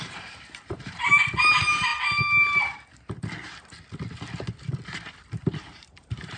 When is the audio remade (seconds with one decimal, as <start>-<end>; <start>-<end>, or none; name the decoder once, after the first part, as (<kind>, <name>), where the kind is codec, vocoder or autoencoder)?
0.0-1.9 (vocoder, BigVGAN v2); 5.2-6.4